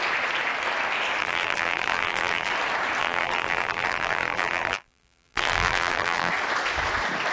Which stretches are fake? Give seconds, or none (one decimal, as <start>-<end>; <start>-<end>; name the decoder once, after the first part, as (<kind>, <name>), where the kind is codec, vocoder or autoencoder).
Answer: 1.2-2.5 (vocoder, BigVGAN v2); 3.0-6.3